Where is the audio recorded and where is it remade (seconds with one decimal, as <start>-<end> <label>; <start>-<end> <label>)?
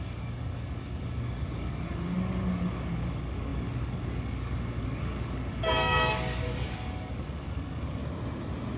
0.0-8.0 remade; 8.0-8.8 recorded